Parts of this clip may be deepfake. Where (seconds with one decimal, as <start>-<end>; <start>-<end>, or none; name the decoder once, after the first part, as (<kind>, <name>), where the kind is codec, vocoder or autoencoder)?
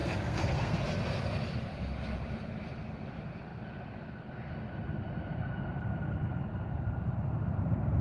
0.0-0.8 (codec, SNAC)